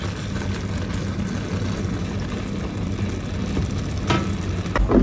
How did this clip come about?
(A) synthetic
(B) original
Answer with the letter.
B